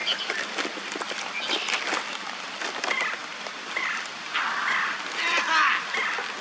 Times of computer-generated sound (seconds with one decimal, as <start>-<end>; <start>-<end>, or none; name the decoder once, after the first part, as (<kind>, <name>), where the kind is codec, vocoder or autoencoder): none